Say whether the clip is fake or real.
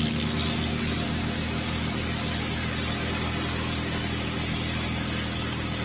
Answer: real